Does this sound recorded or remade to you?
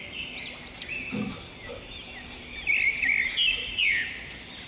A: recorded